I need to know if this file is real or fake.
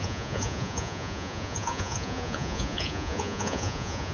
fake